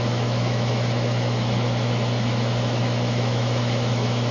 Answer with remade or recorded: remade